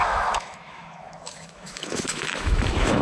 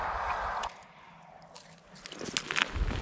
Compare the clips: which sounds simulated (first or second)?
first